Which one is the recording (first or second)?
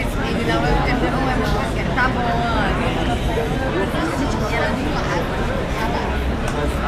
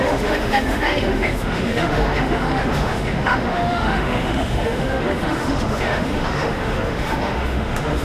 first